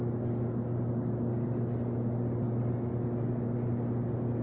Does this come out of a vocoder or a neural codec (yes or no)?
no